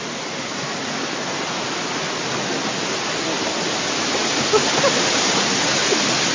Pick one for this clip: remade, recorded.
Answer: recorded